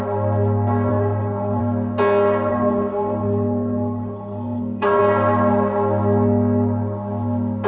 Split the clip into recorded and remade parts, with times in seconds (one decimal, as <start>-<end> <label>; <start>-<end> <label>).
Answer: 0.0-0.9 recorded; 0.9-1.6 remade; 1.6-2.5 recorded; 2.5-5.0 remade; 5.0-7.7 recorded